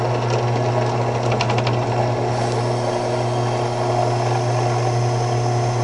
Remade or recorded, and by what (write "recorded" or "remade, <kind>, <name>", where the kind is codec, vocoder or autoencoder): recorded